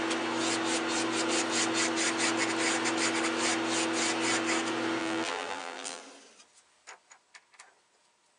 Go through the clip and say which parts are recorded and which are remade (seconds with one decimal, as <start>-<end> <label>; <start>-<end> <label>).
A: 0.0-5.0 recorded; 5.0-6.0 remade; 6.0-8.4 recorded